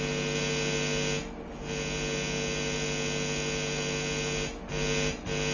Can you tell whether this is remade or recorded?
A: recorded